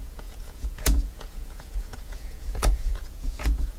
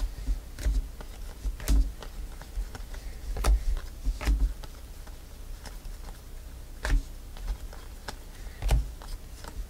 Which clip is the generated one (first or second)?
first